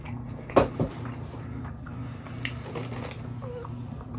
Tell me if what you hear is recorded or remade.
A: recorded